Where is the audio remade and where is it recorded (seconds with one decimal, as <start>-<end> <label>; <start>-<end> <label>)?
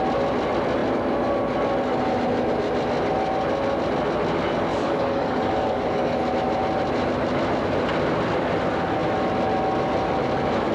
0.0-4.7 recorded; 4.7-6.3 remade; 6.3-10.7 recorded